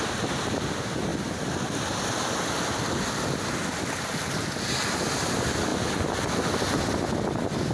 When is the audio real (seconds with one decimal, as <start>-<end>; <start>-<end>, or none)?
0.0-7.7